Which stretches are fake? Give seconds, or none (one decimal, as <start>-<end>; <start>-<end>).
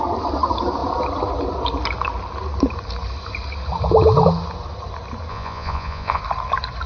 5.3-6.2